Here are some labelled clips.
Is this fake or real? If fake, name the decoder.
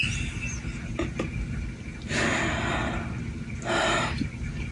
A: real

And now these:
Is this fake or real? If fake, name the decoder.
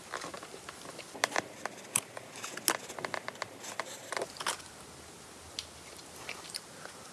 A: real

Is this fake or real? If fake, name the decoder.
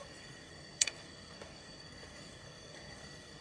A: fake, codec, SNAC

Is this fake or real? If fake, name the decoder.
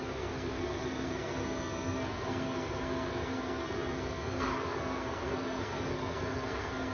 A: fake, codec, SNAC